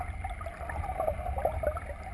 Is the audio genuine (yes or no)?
yes